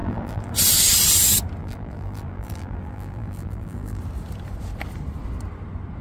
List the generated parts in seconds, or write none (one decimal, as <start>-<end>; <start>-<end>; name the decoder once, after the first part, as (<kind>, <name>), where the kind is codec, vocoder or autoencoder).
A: 0.0-0.5 (vocoder, BigVGAN v2); 1.6-4.0